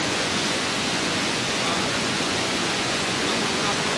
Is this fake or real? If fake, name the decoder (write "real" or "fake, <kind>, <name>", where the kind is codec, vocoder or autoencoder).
fake, vocoder, Vocos